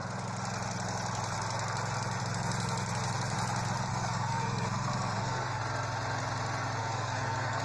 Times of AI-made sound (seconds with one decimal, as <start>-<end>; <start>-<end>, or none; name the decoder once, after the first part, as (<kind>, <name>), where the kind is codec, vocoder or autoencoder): 3.9-5.6 (codec, SNAC); 6.8-7.6

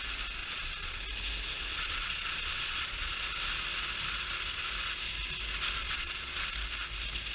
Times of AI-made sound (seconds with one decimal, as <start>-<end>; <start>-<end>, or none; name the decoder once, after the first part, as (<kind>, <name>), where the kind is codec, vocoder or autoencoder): 0.4-1.0 (vocoder, Vocos); 1.7-3.2; 5.8-6.4